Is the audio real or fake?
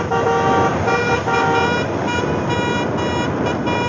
real